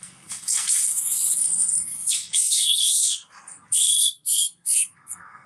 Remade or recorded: remade